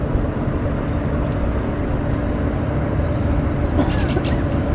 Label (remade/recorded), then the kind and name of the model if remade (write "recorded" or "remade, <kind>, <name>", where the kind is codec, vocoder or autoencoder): recorded